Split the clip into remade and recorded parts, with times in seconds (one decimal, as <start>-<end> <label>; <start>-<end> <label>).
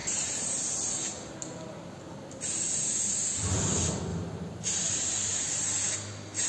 0.0-0.6 remade; 0.6-4.1 recorded; 4.1-5.4 remade; 5.4-6.5 recorded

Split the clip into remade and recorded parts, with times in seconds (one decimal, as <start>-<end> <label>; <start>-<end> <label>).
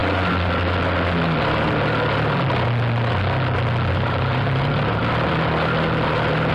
0.0-3.9 recorded; 3.9-5.0 remade; 5.0-6.5 recorded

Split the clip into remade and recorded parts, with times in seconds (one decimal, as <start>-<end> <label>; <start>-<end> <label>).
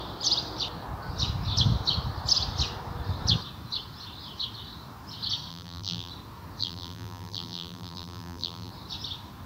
0.0-5.5 recorded; 5.5-6.1 remade; 6.1-6.6 recorded; 6.6-8.7 remade; 8.7-9.5 recorded